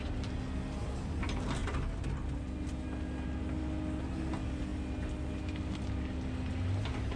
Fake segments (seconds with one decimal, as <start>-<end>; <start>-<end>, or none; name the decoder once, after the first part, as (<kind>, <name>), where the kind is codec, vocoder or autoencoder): none

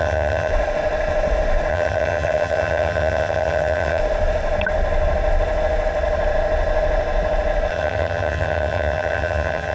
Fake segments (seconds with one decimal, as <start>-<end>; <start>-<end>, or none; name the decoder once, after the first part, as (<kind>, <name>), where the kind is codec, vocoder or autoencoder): 0.0-0.5 (vocoder, HiFi-GAN); 1.7-4.0; 7.7-9.7

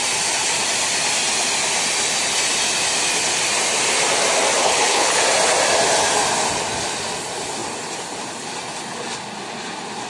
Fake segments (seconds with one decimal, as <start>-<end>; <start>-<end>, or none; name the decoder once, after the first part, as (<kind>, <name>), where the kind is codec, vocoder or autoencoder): 4.6-5.2 (codec, HILCodec)

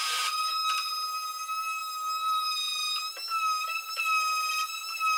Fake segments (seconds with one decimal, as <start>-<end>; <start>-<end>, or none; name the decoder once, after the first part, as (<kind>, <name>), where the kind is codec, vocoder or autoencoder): none

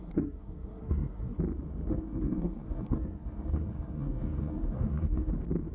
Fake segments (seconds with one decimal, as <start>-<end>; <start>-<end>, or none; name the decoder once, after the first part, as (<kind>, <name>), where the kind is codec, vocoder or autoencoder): 0.0-1.4 (codec, SNAC); 1.9-5.3

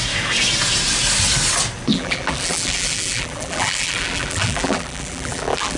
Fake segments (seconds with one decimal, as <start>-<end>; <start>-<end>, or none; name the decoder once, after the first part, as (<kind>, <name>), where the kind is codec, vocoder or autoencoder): 1.9-5.8 (vocoder, BigVGAN v2)

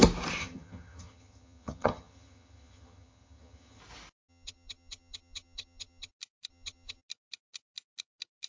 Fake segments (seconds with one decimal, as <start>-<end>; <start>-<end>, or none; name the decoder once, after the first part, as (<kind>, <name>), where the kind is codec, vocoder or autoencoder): 0.4-3.8 (vocoder, HiFi-GAN); 4.3-6.1; 6.5-7.0

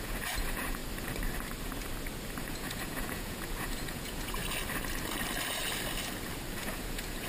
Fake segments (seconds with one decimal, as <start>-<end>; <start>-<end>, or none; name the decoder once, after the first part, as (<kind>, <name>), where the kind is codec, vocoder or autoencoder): 0.0-0.8 (vocoder, Vocos); 2.4-4.4; 6.6-7.3